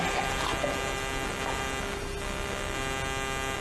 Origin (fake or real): real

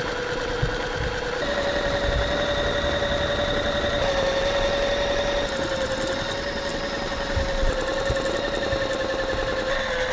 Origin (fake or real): real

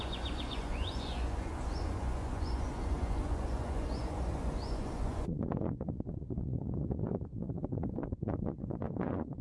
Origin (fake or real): fake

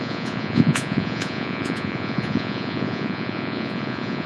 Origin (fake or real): fake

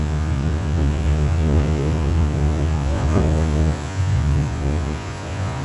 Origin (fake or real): fake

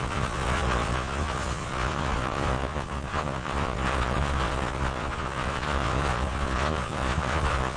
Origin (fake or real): fake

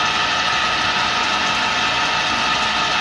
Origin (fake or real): fake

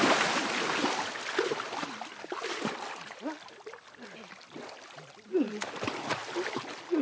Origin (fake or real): real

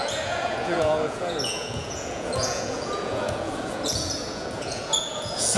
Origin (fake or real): fake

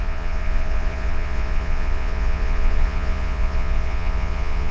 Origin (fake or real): fake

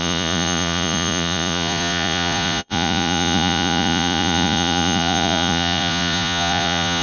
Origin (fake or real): fake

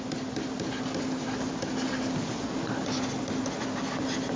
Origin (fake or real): real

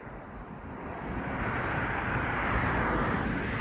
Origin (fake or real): real